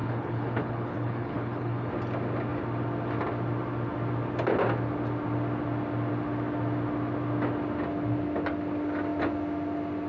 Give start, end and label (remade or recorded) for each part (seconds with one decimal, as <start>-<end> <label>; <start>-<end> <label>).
0.0-1.9 remade; 1.9-10.1 recorded